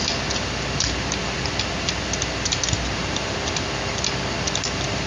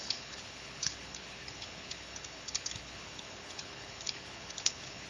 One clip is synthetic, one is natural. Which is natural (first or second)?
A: first